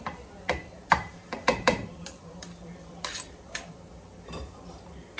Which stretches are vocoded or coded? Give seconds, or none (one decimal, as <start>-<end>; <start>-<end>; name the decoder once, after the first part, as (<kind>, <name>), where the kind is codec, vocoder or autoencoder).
0.6-3.7 (vocoder, BigVGAN v2)